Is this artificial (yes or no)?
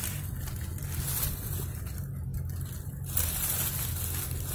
no